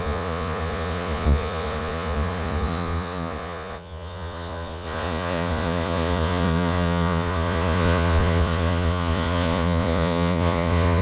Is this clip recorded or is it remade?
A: remade